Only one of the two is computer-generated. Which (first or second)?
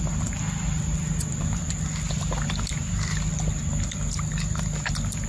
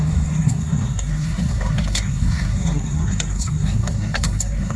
second